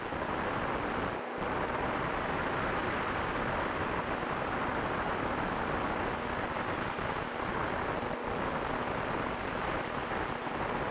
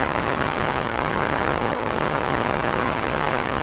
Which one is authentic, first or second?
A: first